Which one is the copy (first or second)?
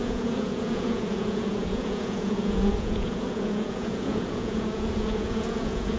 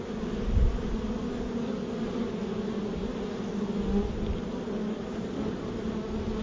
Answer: first